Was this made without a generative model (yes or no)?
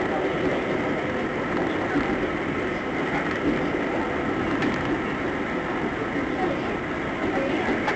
yes